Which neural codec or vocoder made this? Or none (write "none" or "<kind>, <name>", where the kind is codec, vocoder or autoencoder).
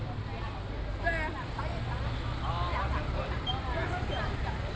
none